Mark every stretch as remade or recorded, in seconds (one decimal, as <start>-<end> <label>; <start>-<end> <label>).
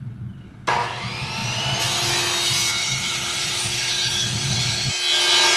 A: 0.0-2.8 recorded; 2.8-4.9 remade; 4.9-5.6 recorded